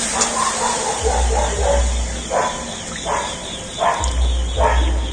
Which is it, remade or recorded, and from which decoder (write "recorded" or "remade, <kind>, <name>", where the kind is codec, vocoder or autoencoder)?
recorded